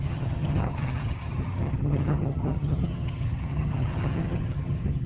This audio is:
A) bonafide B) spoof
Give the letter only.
B